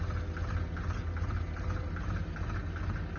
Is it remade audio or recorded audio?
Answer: recorded